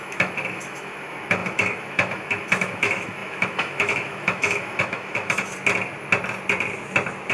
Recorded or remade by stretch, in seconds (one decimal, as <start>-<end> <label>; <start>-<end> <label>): 0.0-5.5 remade; 5.5-7.3 recorded

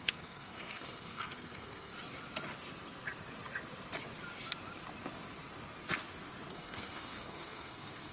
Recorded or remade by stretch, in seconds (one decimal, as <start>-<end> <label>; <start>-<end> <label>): 0.0-1.9 remade; 1.9-6.5 recorded; 6.5-8.1 remade

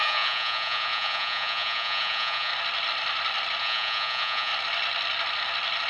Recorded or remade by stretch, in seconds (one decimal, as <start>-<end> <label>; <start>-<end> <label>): 0.0-2.5 remade; 2.5-3.6 recorded; 3.6-4.5 remade; 4.5-5.9 recorded

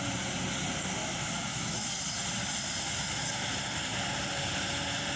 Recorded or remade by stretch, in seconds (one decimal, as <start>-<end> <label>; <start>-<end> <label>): 0.0-1.0 recorded; 1.0-1.9 remade; 1.9-5.2 recorded

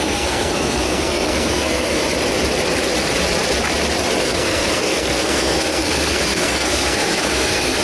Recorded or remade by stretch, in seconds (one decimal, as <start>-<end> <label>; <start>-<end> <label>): 0.0-2.0 remade; 2.0-4.2 recorded; 4.2-7.8 remade